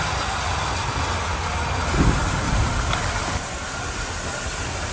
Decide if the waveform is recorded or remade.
recorded